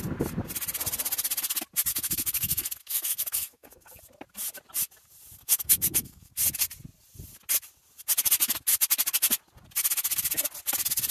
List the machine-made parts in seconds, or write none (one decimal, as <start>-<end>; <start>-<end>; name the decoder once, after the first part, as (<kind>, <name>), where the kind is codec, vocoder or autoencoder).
1.9-4.0 (codec, SNAC); 5.4-6.3